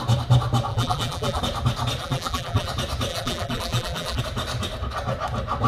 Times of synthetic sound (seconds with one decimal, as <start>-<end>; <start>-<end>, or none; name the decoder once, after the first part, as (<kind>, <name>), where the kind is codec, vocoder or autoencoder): 0.7-1.4 (vocoder, BigVGAN v2); 2.0-2.7; 3.1-4.2